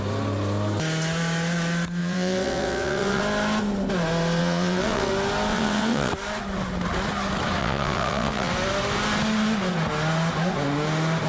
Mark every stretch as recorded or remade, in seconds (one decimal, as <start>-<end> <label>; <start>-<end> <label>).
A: 0.0-2.0 recorded; 2.0-3.2 remade; 3.2-4.4 recorded; 4.4-5.1 remade; 5.1-5.5 recorded; 5.5-6.1 remade; 6.1-7.6 recorded; 7.6-8.5 remade; 8.5-11.3 recorded